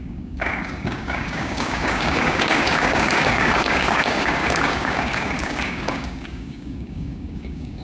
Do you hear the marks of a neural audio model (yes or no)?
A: yes